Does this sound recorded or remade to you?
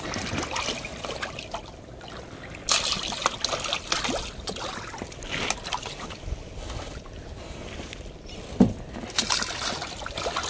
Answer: recorded